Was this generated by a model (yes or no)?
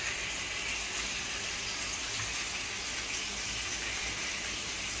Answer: no